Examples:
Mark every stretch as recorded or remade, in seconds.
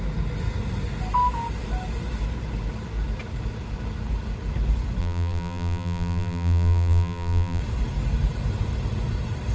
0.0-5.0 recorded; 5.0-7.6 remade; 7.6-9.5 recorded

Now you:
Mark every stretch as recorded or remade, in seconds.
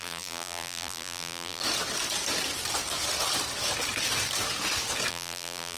0.0-1.6 remade; 1.6-5.1 recorded; 5.1-5.8 remade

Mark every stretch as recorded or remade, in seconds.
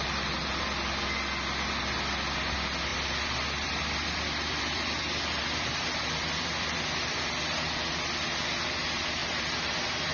0.0-2.9 recorded; 2.9-7.3 remade; 7.3-9.2 recorded; 9.2-10.1 remade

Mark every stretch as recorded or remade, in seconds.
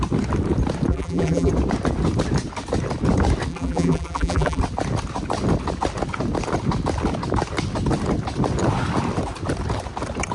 0.0-0.9 recorded; 0.9-1.5 remade; 1.5-3.5 recorded; 3.5-4.6 remade; 4.6-10.3 recorded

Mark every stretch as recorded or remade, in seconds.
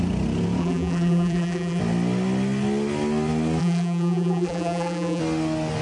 0.0-0.6 recorded; 0.6-1.8 remade; 1.8-3.6 recorded; 3.6-5.2 remade; 5.2-5.8 recorded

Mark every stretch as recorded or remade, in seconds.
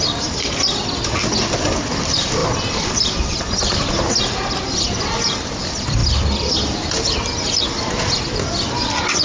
0.0-2.4 recorded; 2.4-3.9 remade; 3.9-6.0 recorded; 6.0-6.5 remade; 6.5-9.2 recorded